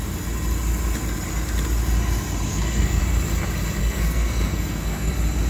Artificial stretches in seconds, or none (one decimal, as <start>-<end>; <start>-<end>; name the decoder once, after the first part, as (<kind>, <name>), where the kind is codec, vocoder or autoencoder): 2.5-3.0 (codec, SNAC); 3.8-5.1